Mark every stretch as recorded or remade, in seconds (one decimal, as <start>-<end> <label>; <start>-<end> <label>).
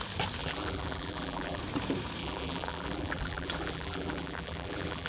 0.0-0.4 recorded; 0.4-1.6 remade; 1.6-2.2 recorded; 2.2-5.1 remade